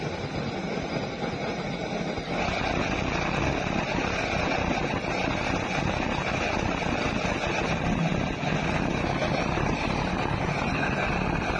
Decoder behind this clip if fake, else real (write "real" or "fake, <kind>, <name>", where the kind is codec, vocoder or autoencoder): real